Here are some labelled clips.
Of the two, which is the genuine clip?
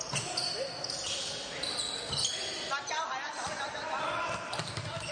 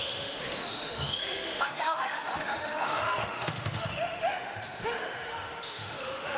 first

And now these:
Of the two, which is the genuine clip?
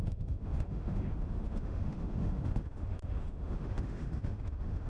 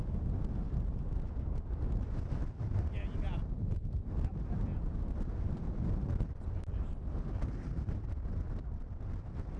second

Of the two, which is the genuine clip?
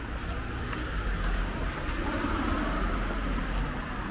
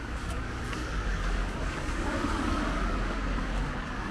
first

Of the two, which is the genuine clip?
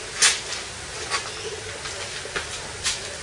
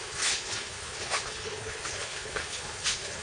first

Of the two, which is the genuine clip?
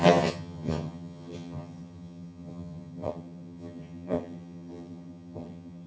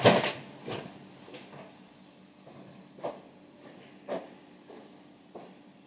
second